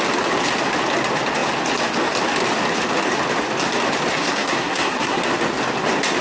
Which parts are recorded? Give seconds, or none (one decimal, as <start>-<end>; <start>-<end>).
0.0-4.1; 5.2-6.2